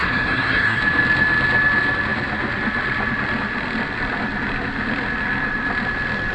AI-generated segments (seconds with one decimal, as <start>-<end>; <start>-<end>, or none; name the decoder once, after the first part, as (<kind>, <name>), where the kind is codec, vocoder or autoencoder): 0.0-0.8 (codec, SNAC)

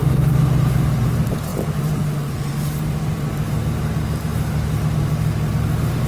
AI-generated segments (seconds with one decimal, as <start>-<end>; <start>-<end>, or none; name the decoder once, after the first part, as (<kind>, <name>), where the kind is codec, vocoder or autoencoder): none

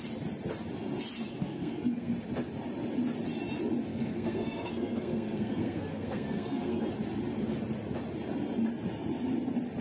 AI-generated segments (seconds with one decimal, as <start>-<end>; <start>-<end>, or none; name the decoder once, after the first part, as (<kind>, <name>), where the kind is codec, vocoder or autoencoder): 1.3-2.1 (codec, SNAC); 3.9-6.9